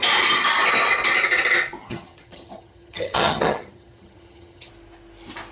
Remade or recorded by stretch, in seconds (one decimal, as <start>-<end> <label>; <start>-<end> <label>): 0.0-1.8 recorded; 1.8-4.7 remade; 4.7-5.5 recorded